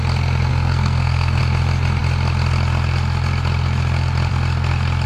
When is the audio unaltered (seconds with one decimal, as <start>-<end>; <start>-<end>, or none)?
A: 0.0-0.5; 1.4-5.1